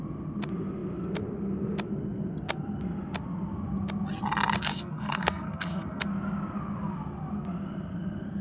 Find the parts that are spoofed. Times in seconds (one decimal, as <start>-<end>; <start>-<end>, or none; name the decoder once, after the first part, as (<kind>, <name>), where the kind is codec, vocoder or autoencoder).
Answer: 4.7-6.1 (codec, SNAC)